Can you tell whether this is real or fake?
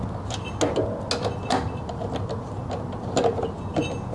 real